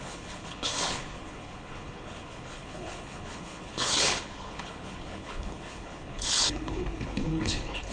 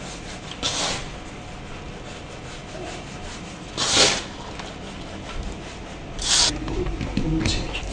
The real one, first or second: second